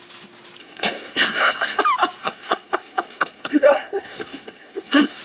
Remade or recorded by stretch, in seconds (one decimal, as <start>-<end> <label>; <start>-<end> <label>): 0.0-0.6 recorded; 0.6-1.8 remade; 1.8-2.2 recorded; 2.2-5.2 remade